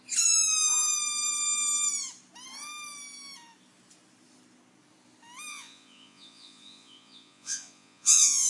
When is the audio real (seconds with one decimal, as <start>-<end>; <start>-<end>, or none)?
0.0-5.5